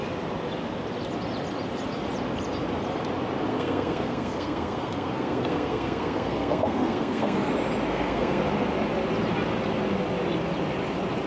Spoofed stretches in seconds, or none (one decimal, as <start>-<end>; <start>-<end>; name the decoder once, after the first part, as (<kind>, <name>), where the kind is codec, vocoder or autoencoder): 3.5-7.5 (codec, SNAC); 7.9-8.4